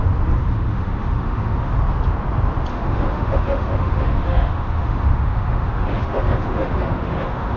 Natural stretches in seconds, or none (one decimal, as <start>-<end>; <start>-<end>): 0.0-0.4; 1.7-2.7